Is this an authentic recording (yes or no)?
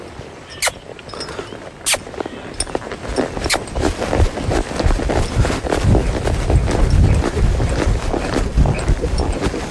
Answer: yes